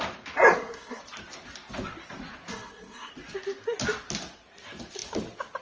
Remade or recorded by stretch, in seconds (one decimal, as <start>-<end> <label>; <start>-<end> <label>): 0.0-0.5 recorded; 0.5-1.0 remade; 1.0-2.5 recorded; 2.5-3.1 remade; 3.1-5.6 recorded